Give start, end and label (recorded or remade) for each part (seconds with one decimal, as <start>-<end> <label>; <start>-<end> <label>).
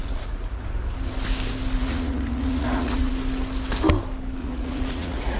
0.0-0.6 remade; 0.6-1.8 recorded; 1.8-3.1 remade; 3.1-4.4 recorded; 4.4-5.4 remade